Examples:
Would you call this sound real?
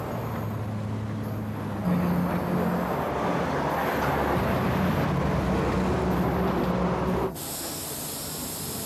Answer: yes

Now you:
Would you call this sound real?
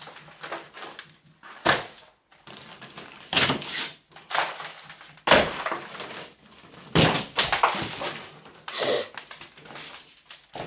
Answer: yes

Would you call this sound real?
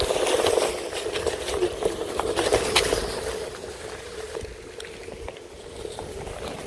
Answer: yes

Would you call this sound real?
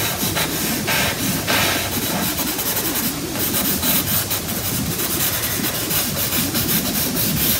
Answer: yes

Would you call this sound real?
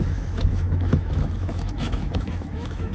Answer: no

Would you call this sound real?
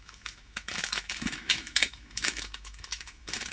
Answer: no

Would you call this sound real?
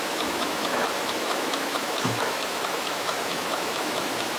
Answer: no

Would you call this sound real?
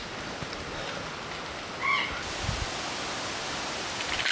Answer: yes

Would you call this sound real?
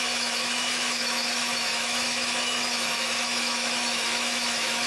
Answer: no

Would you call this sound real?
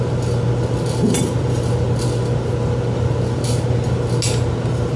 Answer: yes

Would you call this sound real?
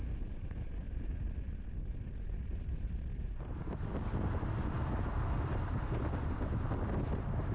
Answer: yes